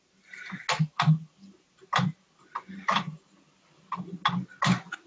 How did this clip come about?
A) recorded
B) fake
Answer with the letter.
A